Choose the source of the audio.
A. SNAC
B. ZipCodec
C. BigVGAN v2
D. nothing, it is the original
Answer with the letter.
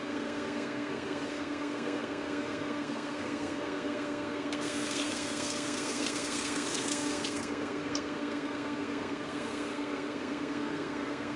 A